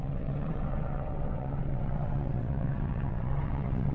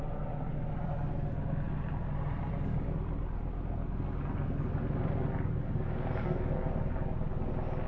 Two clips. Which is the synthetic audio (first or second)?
first